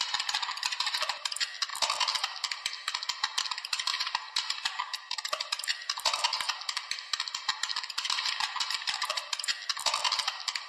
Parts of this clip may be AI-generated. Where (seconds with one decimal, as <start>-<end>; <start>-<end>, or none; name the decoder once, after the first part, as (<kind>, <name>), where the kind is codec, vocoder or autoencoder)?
none